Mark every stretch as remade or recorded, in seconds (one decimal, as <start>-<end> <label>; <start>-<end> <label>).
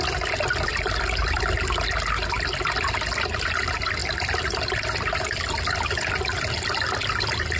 0.0-0.7 recorded; 0.7-1.6 remade; 1.6-4.0 recorded; 4.0-6.1 remade; 6.1-7.6 recorded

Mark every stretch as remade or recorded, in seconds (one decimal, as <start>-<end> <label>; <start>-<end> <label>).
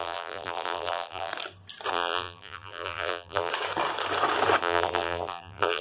0.0-1.3 remade; 1.3-1.9 recorded; 1.9-3.5 remade; 3.5-4.6 recorded; 4.6-5.8 remade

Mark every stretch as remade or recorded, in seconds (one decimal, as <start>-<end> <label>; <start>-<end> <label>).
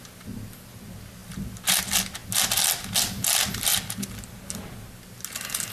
0.0-5.7 recorded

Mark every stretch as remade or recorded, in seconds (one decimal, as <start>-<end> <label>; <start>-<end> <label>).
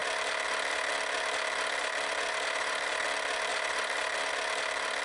0.0-1.8 recorded; 1.8-3.0 remade; 3.0-3.5 recorded; 3.5-4.3 remade; 4.3-5.0 recorded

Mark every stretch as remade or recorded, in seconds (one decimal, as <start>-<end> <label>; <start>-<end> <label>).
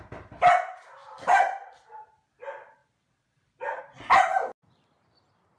0.0-1.0 recorded; 1.0-2.0 remade; 2.0-2.8 recorded; 2.8-3.8 remade; 3.8-5.6 recorded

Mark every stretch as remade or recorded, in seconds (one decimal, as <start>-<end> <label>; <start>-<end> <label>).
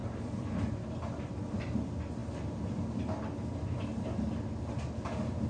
0.0-0.7 remade; 0.7-5.5 recorded